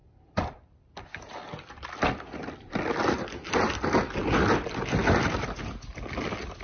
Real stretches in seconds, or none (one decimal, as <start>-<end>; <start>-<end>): 0.0-6.6